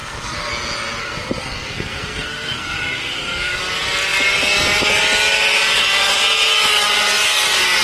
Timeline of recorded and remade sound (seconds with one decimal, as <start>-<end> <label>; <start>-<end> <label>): 0.0-0.5 remade; 0.5-1.0 recorded; 1.0-3.6 remade; 3.6-7.8 recorded